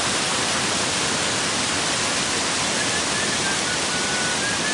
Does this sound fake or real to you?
real